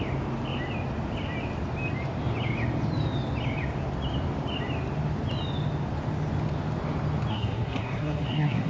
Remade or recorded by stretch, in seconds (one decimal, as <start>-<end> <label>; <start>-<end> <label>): 0.0-7.3 recorded; 7.3-8.7 remade